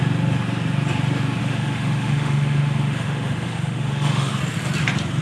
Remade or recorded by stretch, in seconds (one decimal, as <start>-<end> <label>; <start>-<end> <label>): 0.0-1.4 recorded; 1.4-4.3 remade; 4.3-5.2 recorded